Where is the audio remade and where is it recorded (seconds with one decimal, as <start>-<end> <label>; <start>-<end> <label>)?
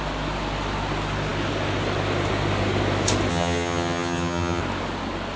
0.0-3.3 recorded; 3.3-4.6 remade; 4.6-5.4 recorded